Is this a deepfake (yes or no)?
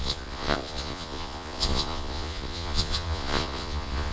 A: yes